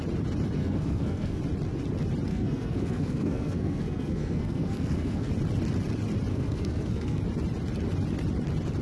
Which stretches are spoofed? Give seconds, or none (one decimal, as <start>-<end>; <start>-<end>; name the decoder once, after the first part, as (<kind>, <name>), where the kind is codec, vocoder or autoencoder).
0.6-1.4 (codec, SNAC); 2.3-5.3; 6.3-7.2